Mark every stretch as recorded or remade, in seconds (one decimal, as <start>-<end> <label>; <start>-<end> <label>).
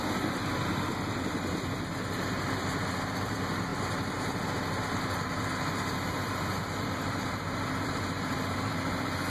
0.0-9.3 recorded